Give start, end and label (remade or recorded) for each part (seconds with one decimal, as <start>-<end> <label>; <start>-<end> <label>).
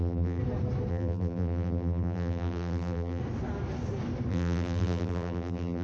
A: 0.0-0.4 remade; 0.4-0.9 recorded; 0.9-3.2 remade; 3.2-4.3 recorded; 4.3-5.8 remade